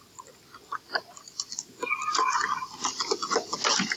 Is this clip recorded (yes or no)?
yes